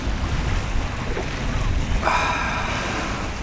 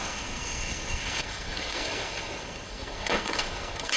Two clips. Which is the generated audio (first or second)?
second